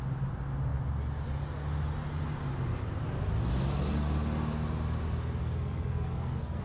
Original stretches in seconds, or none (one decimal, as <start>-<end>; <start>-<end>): 0.0-5.4